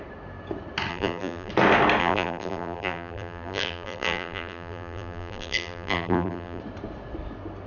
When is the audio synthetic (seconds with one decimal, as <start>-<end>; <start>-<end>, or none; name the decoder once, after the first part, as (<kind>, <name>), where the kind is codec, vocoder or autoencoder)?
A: 0.9-1.5 (vocoder, BigVGAN v2); 2.0-6.6